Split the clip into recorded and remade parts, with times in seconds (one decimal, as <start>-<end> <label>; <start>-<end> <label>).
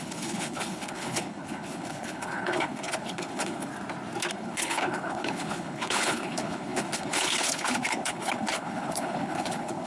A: 0.0-3.7 remade; 3.7-4.3 recorded; 4.3-9.9 remade